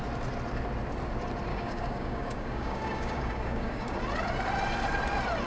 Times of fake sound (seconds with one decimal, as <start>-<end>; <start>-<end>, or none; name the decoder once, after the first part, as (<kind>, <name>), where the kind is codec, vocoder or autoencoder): 1.5-4.0 (codec, DAC)